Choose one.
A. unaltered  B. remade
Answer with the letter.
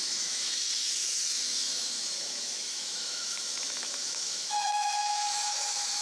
B